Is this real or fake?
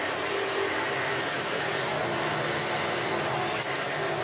real